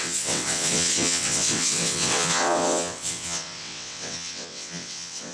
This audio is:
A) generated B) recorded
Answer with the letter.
A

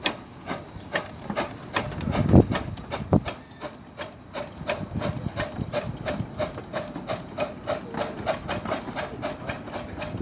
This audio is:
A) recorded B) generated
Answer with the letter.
A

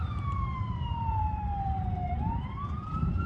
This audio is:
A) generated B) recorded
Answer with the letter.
A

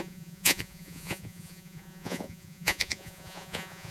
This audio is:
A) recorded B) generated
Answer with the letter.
B